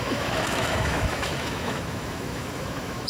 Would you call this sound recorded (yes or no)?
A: no